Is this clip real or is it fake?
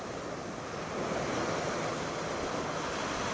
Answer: real